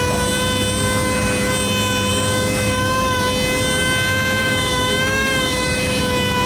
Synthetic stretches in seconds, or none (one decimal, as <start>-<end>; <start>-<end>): 2.1-3.2; 4.4-6.0